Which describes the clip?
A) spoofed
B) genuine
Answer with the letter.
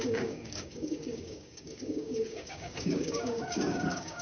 A